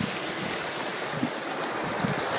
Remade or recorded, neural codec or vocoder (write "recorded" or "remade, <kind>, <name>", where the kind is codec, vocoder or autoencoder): recorded